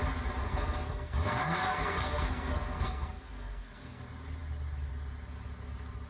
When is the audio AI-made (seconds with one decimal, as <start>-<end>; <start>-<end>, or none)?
0.4-4.0